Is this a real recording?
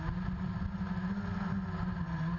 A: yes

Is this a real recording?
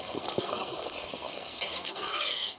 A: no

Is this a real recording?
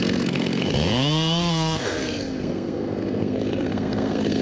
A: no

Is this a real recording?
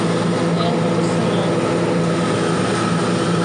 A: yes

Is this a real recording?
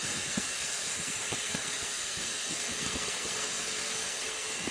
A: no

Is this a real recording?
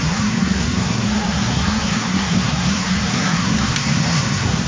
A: no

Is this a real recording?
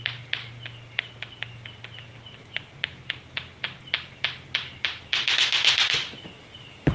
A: yes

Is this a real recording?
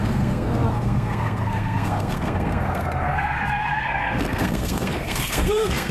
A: no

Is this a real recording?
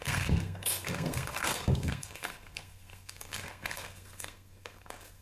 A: no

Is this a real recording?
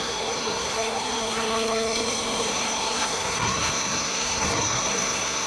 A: no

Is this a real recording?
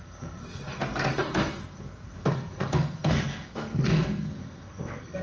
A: no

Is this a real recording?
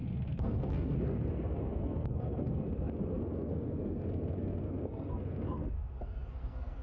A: no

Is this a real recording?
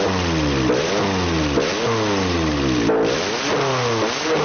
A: yes